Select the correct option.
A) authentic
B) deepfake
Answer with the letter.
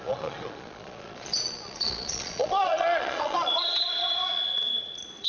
B